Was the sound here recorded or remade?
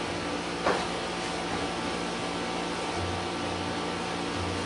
recorded